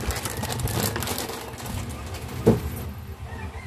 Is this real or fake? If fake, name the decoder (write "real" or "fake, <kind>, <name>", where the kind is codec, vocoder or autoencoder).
real